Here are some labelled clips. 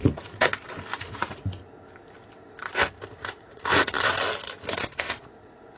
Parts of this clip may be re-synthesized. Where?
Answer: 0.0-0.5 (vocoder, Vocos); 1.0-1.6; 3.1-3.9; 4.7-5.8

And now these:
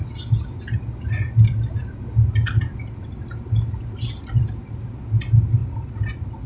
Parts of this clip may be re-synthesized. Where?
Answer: none

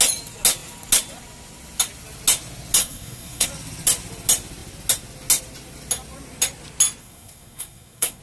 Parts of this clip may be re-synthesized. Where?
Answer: 2.8-3.5 (codec, SNAC); 7.0-8.2

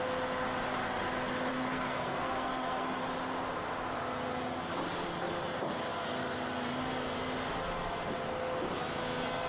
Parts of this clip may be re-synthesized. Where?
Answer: 1.5-3.0 (codec, SNAC)

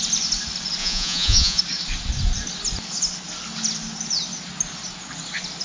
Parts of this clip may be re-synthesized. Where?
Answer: 0.8-1.6 (vocoder, Vocos)

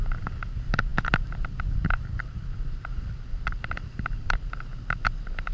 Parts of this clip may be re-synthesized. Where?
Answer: 0.9-4.2 (vocoder, BigVGAN v2)

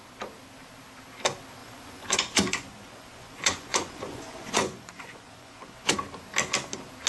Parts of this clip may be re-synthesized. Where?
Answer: 1.6-5.9 (vocoder, Vocos)

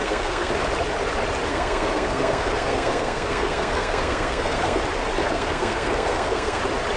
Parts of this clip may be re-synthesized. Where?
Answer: 0.0-0.5 (codec, SNAC); 1.5-4.8; 5.2-6.6